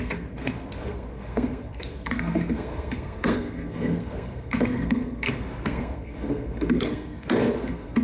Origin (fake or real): fake